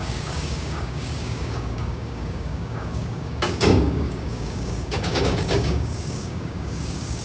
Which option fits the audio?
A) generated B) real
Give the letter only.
A